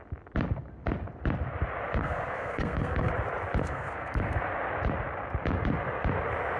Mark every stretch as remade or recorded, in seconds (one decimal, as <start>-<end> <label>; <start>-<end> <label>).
0.0-2.0 recorded; 2.0-3.1 remade; 3.1-3.6 recorded; 3.6-4.4 remade; 4.4-6.6 recorded